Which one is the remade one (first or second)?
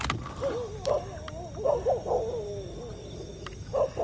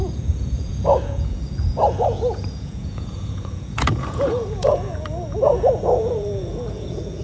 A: second